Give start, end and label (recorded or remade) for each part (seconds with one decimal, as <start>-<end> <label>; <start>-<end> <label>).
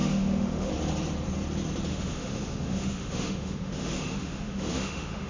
0.0-0.7 remade; 0.7-1.9 recorded; 1.9-5.3 remade